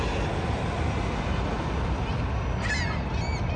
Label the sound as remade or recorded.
recorded